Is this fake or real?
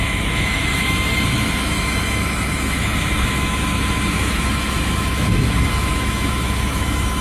fake